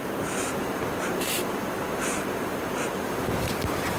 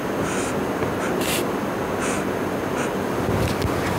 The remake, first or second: first